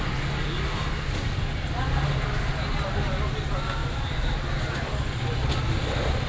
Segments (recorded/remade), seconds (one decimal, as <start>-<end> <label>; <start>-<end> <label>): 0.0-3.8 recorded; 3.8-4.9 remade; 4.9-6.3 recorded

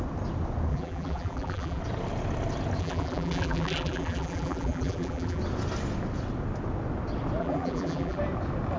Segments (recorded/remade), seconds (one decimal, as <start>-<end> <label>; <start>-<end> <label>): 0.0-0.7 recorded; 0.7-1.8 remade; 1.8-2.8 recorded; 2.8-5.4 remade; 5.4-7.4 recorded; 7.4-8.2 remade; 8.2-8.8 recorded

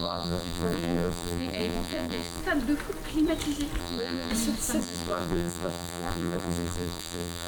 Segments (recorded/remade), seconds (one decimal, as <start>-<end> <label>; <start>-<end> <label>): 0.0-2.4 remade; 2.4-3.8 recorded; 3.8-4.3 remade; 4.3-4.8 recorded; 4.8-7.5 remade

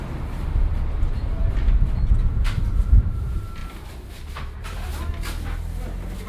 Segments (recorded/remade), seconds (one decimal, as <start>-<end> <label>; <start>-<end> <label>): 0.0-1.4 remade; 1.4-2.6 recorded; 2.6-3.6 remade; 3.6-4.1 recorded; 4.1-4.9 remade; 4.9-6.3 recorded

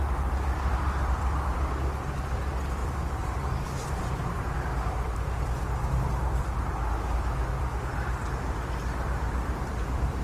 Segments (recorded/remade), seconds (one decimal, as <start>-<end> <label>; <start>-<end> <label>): 0.0-2.8 recorded; 2.8-6.0 remade; 6.0-10.2 recorded